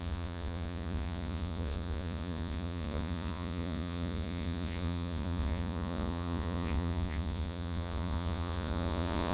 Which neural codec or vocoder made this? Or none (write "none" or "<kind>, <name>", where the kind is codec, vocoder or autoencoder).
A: vocoder, Vocos